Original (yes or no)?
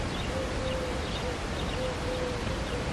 yes